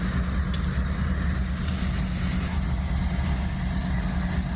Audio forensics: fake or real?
real